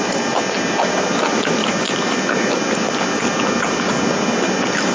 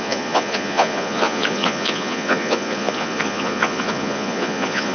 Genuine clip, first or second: first